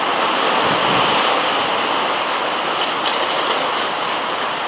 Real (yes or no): yes